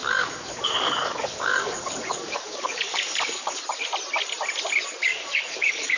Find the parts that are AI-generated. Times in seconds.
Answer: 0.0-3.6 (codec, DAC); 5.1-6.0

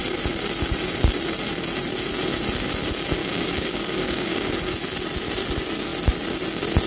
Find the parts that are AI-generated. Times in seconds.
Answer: 3.2-4.5 (codec, DAC)

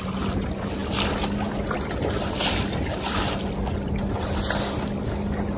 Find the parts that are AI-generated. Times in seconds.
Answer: none

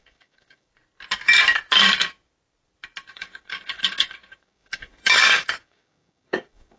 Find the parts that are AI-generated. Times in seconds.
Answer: 0.0-0.7 (codec, DAC); 3.1-6.8

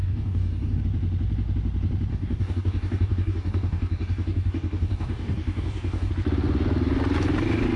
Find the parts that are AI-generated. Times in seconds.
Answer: 0.0-0.8 (codec, DAC); 2.1-6.1

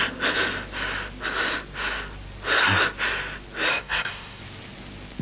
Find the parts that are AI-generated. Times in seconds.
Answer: 3.7-4.4 (codec, DAC)